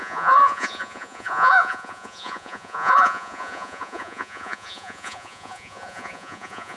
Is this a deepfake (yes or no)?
yes